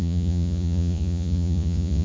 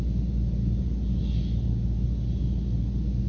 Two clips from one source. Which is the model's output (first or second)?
first